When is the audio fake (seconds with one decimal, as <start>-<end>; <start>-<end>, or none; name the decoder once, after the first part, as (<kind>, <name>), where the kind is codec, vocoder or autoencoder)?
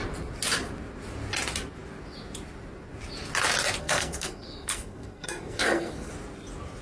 3.8-6.1 (codec, SNAC)